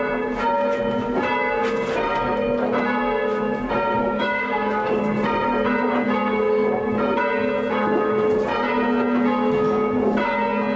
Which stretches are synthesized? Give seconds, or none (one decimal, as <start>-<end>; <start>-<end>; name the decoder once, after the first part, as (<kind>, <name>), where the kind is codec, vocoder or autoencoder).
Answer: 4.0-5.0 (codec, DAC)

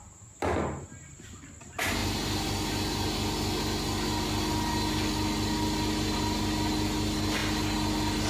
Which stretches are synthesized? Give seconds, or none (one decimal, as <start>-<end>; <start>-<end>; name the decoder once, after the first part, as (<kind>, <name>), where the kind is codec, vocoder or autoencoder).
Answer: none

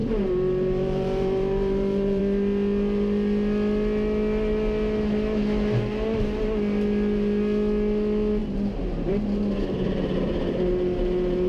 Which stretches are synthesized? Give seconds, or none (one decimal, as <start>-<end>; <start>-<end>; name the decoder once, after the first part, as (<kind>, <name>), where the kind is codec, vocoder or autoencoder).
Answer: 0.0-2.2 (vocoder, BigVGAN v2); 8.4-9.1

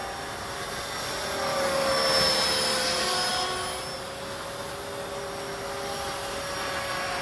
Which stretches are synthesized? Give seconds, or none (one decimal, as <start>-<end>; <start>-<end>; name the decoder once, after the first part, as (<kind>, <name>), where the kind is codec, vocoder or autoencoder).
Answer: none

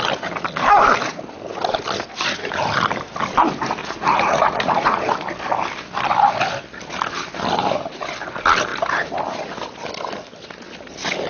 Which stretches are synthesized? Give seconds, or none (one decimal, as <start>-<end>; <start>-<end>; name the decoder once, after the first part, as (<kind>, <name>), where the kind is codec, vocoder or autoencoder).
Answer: 3.8-5.0 (vocoder, Vocos)

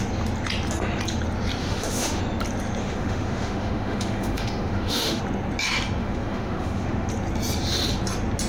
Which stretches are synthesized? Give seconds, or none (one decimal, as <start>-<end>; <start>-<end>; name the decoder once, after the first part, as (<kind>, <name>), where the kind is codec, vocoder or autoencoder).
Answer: 1.6-2.2 (autoencoder, DAC-VAE); 2.8-5.2; 6.0-7.1